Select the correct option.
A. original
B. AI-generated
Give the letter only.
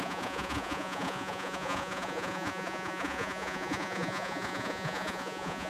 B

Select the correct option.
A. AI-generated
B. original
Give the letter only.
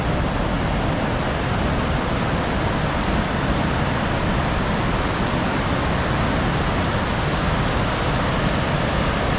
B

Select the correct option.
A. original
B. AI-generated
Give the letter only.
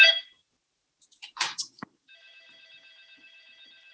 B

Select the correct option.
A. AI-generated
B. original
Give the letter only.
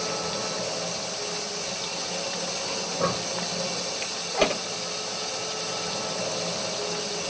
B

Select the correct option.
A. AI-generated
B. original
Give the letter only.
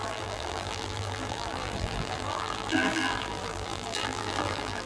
A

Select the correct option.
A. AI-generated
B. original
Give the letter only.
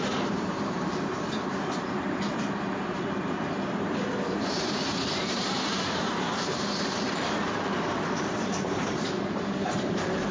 A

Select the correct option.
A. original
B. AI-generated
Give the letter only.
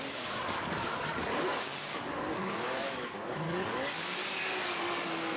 B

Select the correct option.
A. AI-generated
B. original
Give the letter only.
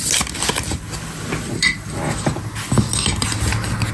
B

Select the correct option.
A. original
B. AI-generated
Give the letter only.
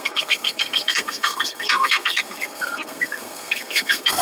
B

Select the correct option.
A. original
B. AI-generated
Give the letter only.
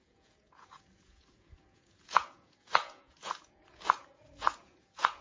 B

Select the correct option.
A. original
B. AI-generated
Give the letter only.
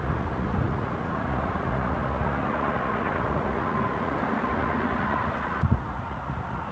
B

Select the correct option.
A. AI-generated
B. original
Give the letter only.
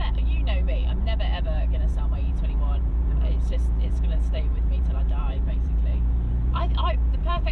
A